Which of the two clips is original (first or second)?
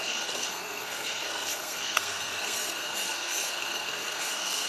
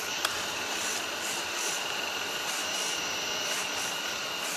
second